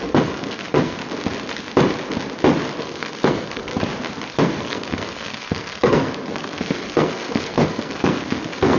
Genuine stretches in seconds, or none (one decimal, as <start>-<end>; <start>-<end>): 1.0-2.8; 3.7-4.3